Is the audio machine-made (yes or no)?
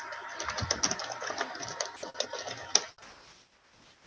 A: no